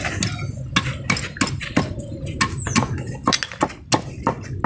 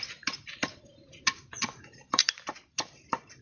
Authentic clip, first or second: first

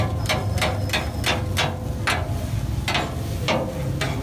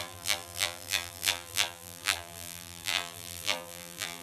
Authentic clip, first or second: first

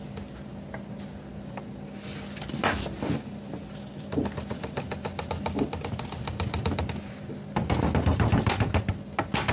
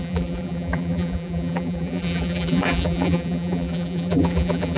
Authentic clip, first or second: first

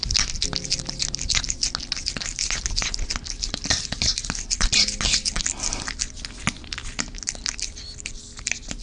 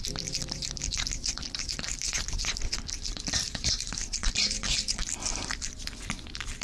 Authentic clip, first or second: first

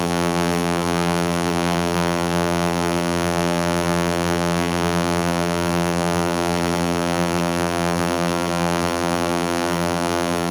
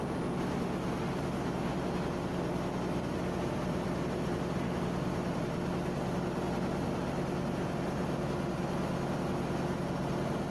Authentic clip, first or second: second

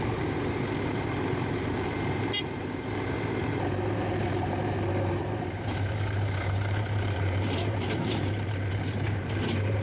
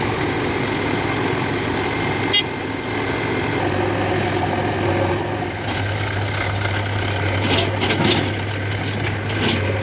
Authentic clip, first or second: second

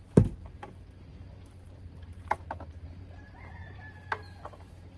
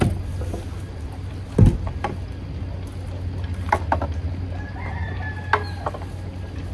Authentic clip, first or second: second